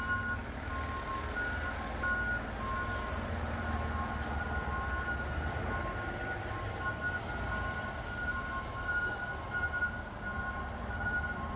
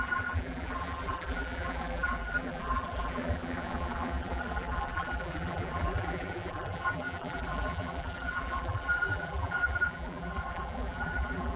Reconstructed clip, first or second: second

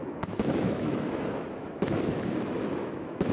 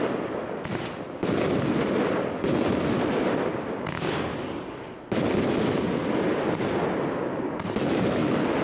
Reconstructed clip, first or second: first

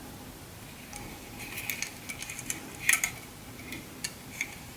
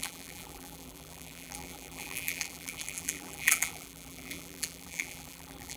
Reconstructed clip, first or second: second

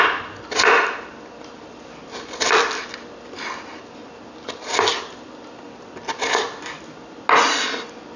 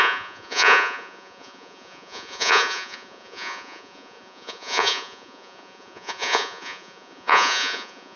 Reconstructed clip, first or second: second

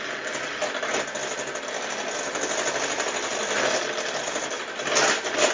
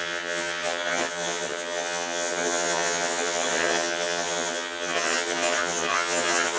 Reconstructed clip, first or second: second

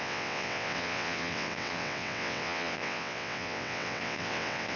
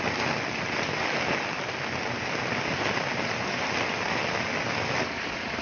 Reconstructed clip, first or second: first